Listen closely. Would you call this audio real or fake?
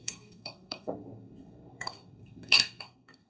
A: fake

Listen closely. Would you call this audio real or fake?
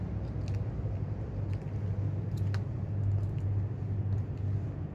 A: real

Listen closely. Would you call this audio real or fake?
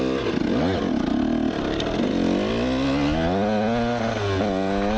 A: real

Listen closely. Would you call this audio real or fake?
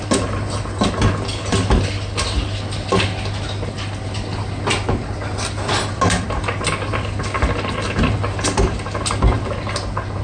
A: real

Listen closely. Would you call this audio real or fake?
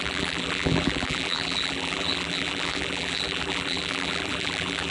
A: fake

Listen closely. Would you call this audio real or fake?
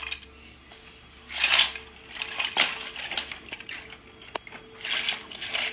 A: real